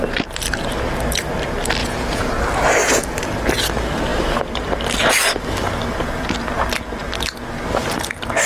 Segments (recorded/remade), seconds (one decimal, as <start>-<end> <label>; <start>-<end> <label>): 0.0-1.8 recorded; 1.8-2.3 remade; 2.3-8.5 recorded